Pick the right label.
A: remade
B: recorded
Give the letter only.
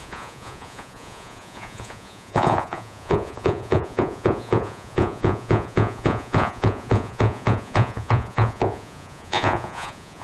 A